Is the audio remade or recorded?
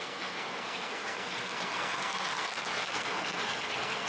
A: remade